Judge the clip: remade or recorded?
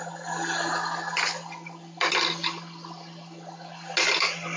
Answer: recorded